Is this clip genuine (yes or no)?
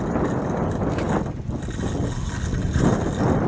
yes